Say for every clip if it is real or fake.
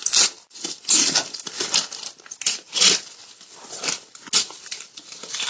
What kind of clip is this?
real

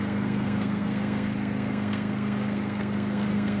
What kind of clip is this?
fake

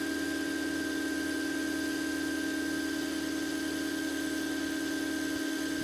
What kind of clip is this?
real